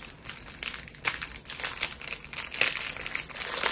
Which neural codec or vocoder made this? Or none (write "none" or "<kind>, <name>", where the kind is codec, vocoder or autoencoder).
none